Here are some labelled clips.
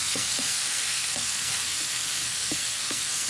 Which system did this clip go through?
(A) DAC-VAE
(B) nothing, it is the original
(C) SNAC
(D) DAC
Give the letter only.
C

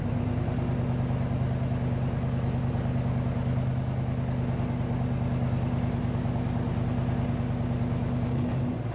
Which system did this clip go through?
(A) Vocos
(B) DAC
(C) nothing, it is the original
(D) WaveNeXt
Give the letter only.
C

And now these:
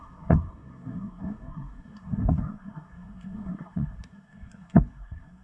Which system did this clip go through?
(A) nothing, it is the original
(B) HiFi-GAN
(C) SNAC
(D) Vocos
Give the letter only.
C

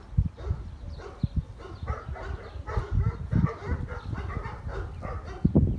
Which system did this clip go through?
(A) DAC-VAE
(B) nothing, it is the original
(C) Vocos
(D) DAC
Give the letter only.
B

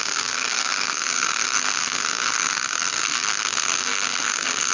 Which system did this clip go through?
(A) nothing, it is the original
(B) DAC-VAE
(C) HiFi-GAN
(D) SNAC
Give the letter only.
D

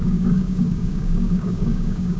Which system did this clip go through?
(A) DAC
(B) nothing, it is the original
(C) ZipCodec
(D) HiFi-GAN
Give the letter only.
A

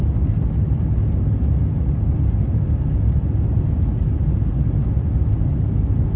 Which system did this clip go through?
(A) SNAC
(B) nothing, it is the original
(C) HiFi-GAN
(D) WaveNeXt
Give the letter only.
B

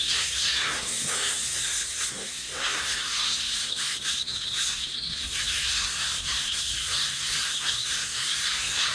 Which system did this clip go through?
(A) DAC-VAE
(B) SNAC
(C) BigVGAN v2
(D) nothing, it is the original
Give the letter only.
B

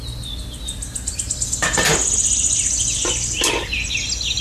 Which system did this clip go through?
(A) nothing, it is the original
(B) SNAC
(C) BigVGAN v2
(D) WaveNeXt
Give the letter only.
A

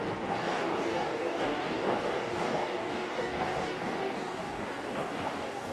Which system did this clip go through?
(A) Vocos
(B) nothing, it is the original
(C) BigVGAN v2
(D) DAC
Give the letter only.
D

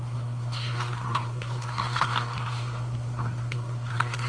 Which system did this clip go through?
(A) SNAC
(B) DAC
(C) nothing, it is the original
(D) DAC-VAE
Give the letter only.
A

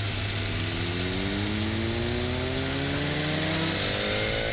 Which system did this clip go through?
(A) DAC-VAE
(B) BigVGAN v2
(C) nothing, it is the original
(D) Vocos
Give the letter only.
C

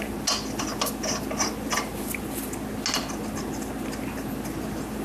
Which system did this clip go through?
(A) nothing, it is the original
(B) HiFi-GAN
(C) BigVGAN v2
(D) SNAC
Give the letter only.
A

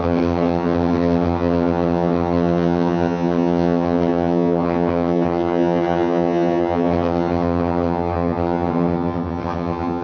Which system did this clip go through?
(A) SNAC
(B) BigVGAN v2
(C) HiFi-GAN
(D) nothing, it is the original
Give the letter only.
C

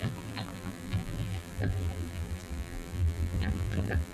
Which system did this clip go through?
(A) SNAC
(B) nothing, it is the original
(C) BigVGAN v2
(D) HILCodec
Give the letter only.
C